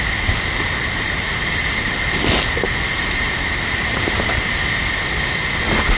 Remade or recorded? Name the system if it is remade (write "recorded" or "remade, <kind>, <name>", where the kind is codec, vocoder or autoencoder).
recorded